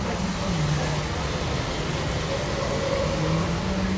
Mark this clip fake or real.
real